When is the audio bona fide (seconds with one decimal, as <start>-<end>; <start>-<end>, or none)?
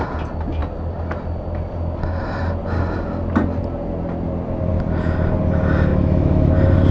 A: 0.0-5.9; 6.5-6.9